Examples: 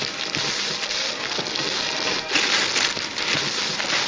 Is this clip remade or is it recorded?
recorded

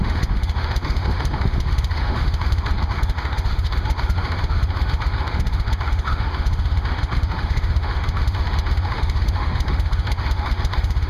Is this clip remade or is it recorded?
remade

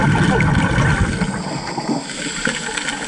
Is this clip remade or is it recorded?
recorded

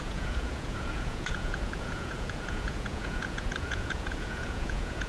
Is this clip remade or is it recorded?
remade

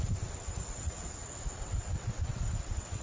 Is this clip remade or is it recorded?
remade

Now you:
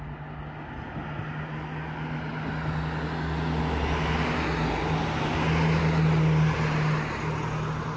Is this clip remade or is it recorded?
recorded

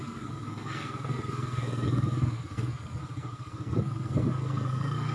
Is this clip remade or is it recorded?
remade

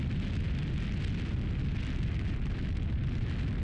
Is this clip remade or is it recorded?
recorded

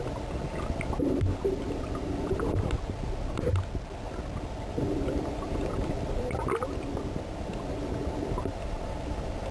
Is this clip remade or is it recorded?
recorded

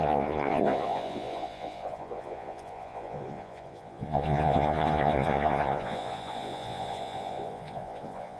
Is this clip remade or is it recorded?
remade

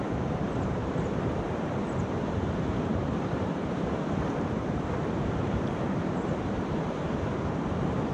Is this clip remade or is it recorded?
remade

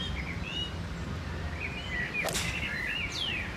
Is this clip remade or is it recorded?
recorded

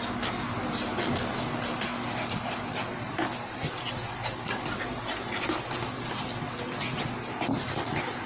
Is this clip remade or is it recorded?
recorded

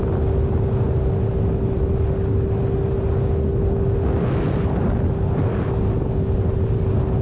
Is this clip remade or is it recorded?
recorded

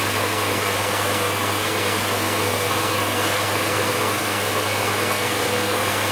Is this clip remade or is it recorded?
remade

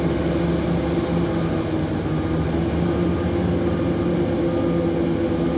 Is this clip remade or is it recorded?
recorded